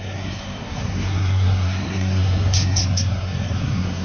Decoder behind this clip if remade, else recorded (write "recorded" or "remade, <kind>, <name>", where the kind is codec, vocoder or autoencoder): remade, codec, SNAC